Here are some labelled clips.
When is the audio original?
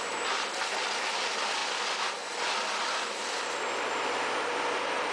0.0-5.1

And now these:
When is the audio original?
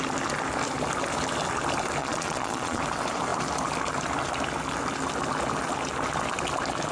0.0-2.0; 2.8-6.9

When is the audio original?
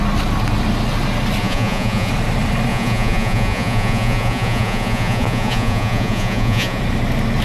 0.0-1.4; 2.1-2.7; 6.8-7.4